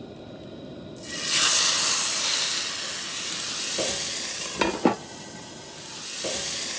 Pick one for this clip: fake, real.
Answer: real